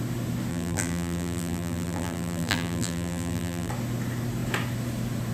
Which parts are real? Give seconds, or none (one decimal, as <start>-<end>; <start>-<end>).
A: 0.0-0.5; 3.7-5.3

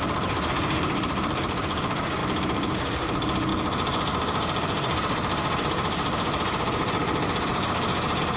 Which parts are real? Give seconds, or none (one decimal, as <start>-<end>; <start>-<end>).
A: 2.2-2.8

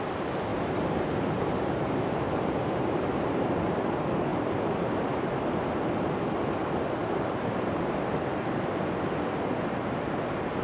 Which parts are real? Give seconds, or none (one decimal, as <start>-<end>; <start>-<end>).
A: 0.0-0.5; 3.9-4.3; 5.7-7.0; 8.0-10.6

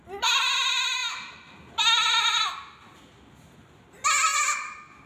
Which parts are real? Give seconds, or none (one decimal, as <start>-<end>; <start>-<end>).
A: 0.0-5.1

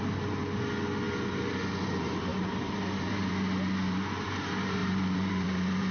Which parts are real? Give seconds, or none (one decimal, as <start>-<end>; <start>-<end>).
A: 0.4-1.8